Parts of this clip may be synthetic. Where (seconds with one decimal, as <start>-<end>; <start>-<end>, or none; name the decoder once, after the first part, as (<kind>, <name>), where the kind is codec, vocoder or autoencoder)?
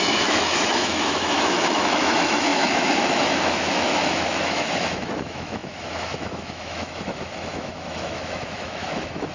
0.0-9.3 (autoencoder, DAC-VAE)